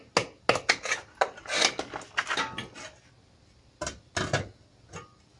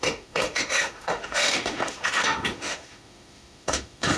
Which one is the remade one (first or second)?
second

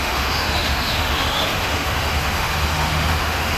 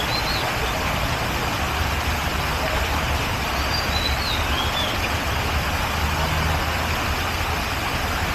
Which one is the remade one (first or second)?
first